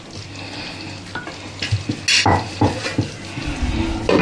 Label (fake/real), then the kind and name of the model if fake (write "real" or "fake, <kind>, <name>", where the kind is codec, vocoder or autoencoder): real